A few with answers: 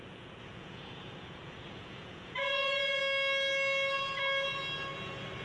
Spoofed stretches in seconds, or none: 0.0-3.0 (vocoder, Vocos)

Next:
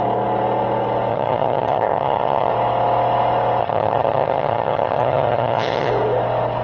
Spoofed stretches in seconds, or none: 1.1-2.5 (vocoder, HiFi-GAN); 3.6-5.9

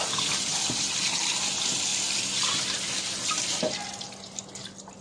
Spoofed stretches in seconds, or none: none

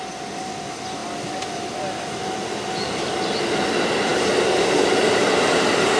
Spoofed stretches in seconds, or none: none

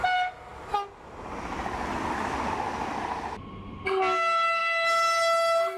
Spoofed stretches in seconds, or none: none

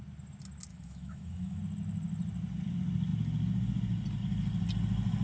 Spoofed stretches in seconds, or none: 0.7-1.6 (autoencoder, DAC-VAE)